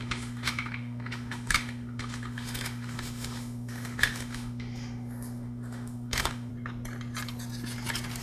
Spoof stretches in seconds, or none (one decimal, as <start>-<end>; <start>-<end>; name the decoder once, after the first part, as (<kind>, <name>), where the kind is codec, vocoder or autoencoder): 0.0-6.5 (autoencoder, DAC-VAE)